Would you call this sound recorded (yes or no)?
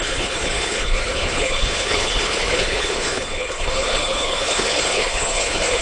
no